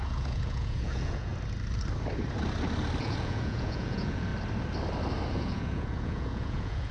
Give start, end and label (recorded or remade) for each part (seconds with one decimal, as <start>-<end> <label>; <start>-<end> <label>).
0.0-1.3 remade; 1.3-3.0 recorded; 3.0-4.3 remade; 4.3-5.3 recorded; 5.3-6.9 remade